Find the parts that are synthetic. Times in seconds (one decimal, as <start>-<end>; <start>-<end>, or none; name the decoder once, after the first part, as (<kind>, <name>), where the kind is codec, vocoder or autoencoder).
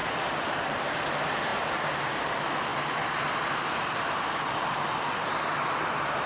none